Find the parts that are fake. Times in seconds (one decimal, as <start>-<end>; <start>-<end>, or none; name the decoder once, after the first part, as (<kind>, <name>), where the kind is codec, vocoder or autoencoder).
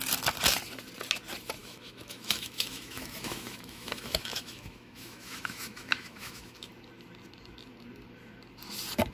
1.6-6.7 (autoencoder, DAC-VAE)